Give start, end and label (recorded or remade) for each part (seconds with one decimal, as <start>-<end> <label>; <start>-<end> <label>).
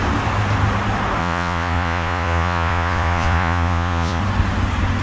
0.0-1.2 recorded; 1.2-4.2 remade; 4.2-5.0 recorded